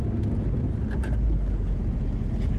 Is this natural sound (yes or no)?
yes